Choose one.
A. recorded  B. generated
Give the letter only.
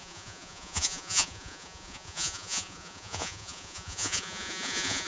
B